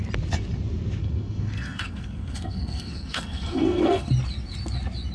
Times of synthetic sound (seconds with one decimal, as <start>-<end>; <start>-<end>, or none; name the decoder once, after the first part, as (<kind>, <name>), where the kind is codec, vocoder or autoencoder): 1.0-4.1 (codec, SNAC)